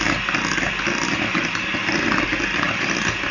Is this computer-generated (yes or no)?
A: no